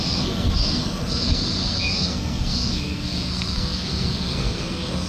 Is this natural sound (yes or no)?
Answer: no